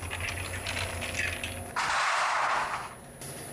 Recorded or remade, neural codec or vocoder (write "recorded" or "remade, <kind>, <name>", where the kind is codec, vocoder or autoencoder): recorded